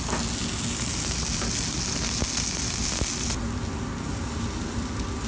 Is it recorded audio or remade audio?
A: recorded